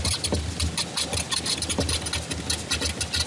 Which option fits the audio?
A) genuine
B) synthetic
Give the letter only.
A